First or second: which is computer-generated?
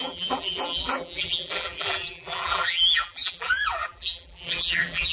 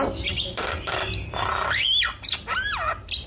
first